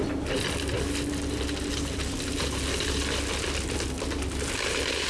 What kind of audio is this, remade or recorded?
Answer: recorded